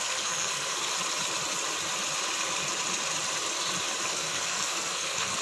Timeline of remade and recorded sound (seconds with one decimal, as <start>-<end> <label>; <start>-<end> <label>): 0.0-0.9 remade; 0.9-4.1 recorded; 4.1-5.4 remade